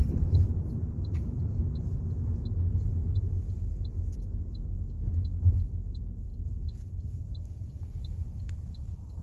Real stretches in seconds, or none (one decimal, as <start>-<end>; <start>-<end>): 1.6-3.4; 6.3-6.9